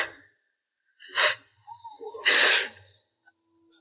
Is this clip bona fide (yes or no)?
yes